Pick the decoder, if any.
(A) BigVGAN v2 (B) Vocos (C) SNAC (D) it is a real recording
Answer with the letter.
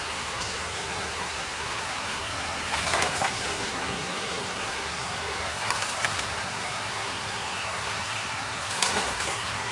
C